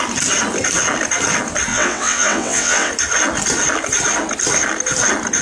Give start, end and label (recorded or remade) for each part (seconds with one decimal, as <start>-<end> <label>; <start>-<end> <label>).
0.0-1.7 recorded; 1.7-2.9 remade; 2.9-5.4 recorded